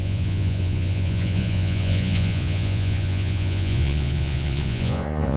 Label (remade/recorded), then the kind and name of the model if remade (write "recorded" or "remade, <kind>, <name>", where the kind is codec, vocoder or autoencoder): remade, vocoder, Vocos